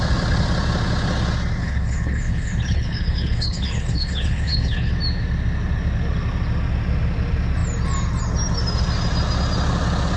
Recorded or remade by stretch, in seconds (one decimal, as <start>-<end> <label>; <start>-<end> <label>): 0.0-1.6 recorded; 1.6-4.9 remade; 4.9-10.2 recorded